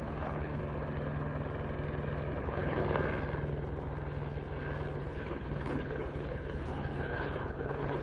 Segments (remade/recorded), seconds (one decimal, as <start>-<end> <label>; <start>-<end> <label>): 0.0-0.6 remade; 0.6-2.4 recorded; 2.4-2.8 remade; 2.8-5.0 recorded; 5.0-8.0 remade